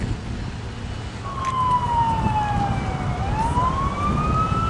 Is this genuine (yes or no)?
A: yes